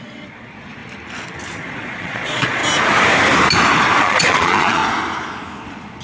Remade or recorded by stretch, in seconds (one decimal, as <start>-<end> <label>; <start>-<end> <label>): 0.0-0.8 remade; 0.8-1.7 recorded; 1.7-2.6 remade; 2.6-4.0 recorded; 4.0-4.8 remade; 4.8-5.6 recorded; 5.6-6.0 remade